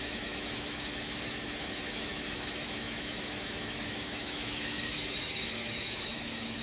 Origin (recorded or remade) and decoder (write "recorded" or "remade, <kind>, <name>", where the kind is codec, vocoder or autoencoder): remade, autoencoder, DAC-VAE